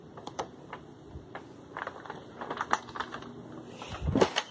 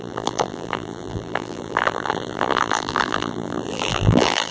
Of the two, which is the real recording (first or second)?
first